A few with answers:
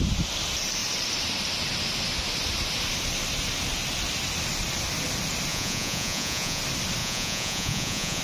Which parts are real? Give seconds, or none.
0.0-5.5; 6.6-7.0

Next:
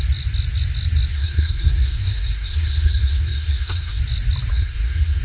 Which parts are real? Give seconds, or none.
0.0-1.1; 4.0-4.5

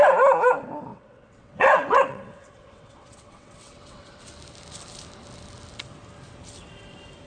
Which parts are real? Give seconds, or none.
0.0-0.9; 4.2-7.3